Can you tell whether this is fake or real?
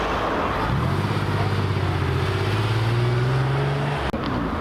real